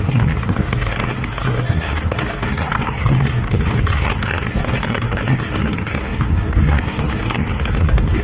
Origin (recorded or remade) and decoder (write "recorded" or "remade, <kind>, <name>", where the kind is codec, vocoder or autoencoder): remade, codec, SNAC